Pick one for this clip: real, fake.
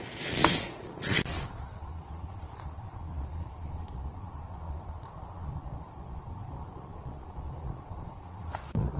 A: fake